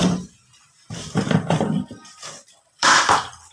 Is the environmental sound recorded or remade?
remade